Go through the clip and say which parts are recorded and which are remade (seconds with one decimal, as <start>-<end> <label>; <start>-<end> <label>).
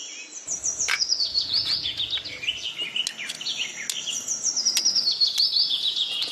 0.0-0.9 recorded; 0.9-1.9 remade; 1.9-5.7 recorded; 5.7-6.3 remade